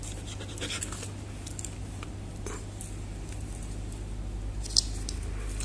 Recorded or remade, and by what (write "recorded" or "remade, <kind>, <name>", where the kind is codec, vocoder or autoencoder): recorded